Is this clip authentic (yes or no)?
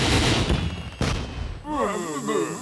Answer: yes